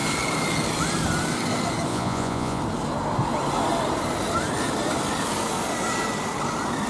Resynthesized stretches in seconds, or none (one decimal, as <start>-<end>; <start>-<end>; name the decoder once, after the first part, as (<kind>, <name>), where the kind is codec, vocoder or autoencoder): 1.9-2.6 (vocoder, Vocos)

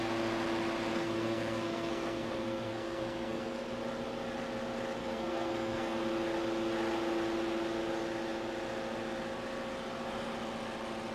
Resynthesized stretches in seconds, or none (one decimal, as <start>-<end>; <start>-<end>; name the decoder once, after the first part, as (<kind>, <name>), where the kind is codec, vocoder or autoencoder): 0.9-3.7 (codec, SNAC); 5.0-6.0

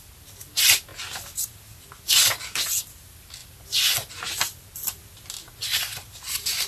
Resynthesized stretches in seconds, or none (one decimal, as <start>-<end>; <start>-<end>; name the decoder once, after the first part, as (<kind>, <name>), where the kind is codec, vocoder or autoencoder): none